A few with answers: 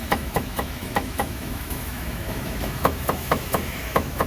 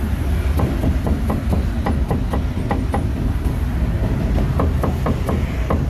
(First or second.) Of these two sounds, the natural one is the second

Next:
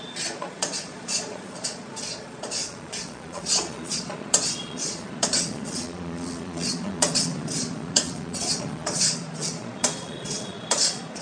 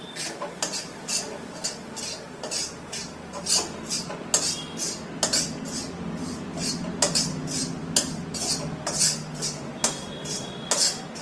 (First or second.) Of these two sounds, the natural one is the second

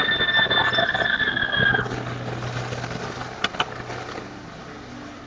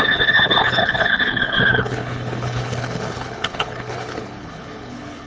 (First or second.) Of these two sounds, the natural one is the first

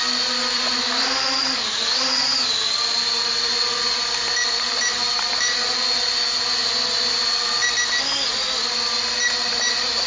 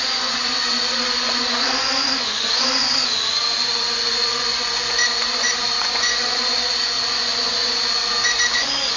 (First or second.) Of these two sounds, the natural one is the first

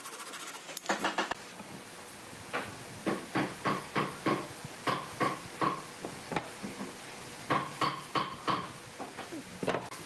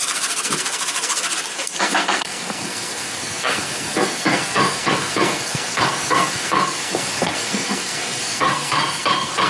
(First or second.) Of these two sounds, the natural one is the first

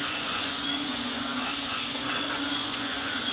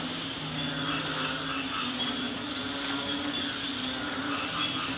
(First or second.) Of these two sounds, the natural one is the second